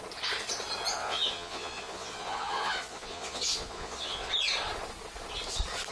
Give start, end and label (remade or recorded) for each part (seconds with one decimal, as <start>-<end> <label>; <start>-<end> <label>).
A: 0.0-1.0 recorded; 1.0-4.3 remade; 4.3-5.9 recorded